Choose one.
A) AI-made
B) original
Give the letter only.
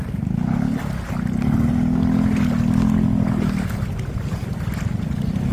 B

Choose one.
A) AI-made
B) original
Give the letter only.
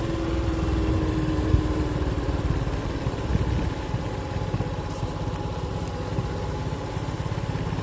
B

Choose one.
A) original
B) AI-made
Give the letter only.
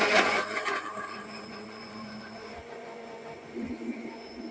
B